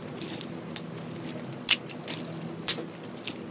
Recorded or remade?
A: recorded